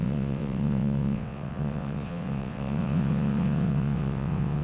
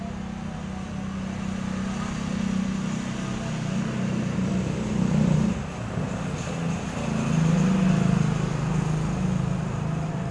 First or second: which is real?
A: second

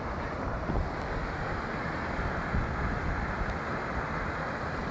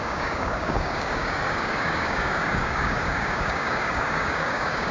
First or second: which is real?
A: first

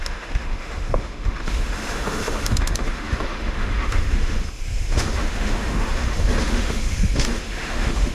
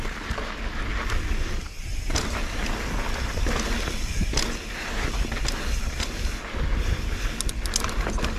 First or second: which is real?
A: second